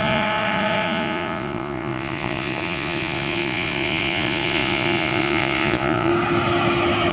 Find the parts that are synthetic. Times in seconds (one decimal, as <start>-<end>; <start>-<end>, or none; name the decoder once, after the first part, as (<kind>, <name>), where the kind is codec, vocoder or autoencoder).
0.0-6.1 (vocoder, Vocos)